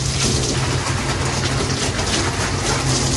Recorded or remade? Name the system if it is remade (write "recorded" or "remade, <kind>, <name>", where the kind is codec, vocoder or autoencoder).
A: recorded